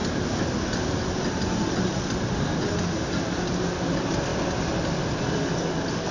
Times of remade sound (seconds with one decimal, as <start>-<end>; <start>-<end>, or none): none